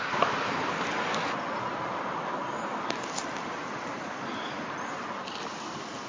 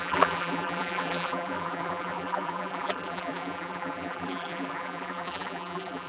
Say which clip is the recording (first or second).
first